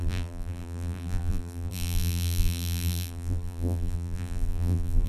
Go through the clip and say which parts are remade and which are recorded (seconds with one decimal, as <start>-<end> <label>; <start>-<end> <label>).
0.0-5.1 remade